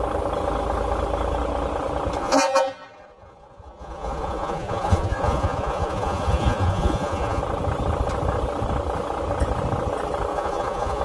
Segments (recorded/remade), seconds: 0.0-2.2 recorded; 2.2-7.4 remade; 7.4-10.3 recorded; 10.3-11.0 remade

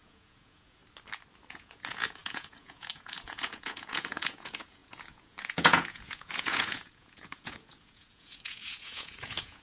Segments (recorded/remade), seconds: 0.0-0.8 remade; 0.8-1.5 recorded; 1.5-9.6 remade

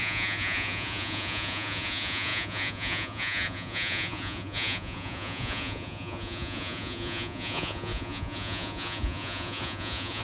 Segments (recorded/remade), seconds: 0.0-10.2 remade

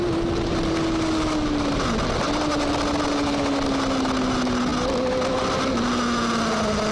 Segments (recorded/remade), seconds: 0.0-6.9 recorded

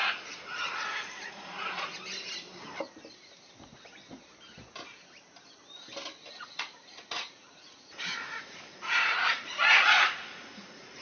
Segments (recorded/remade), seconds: 0.0-1.9 remade; 1.9-6.4 recorded; 6.4-11.0 remade